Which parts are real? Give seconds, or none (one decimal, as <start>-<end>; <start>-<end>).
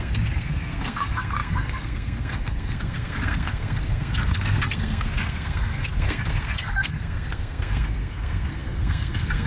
none